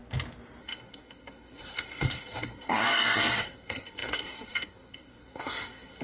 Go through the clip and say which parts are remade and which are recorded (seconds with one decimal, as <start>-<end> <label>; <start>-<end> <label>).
0.0-0.6 recorded; 0.6-6.0 remade